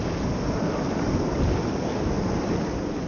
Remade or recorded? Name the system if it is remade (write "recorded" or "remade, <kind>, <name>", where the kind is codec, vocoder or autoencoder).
recorded